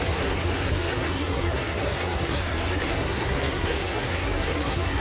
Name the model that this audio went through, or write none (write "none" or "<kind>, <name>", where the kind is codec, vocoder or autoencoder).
codec, SNAC